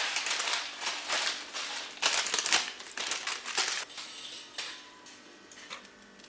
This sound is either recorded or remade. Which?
recorded